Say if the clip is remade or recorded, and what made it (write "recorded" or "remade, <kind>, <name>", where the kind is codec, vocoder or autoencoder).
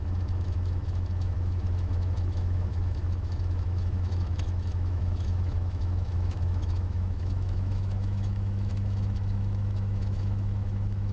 remade, autoencoder, DAC-VAE